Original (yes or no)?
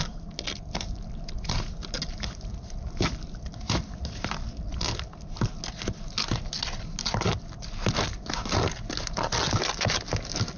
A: yes